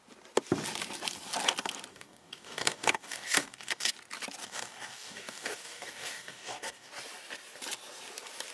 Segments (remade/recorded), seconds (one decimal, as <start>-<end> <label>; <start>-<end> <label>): 0.0-1.9 recorded; 1.9-3.9 remade; 3.9-4.4 recorded; 4.4-6.9 remade; 6.9-8.5 recorded